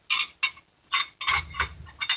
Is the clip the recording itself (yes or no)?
yes